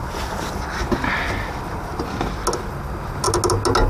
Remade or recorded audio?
recorded